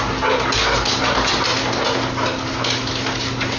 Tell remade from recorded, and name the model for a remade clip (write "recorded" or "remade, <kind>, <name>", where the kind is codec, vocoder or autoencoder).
recorded